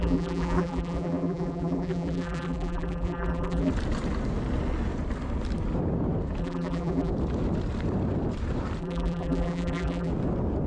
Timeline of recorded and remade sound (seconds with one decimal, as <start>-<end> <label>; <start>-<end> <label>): 0.0-3.7 remade; 3.7-6.4 recorded; 6.4-7.1 remade; 7.1-8.8 recorded; 8.8-10.1 remade; 10.1-10.7 recorded